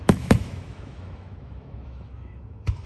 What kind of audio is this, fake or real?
fake